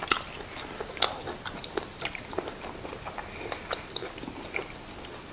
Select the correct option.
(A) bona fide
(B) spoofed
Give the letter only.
A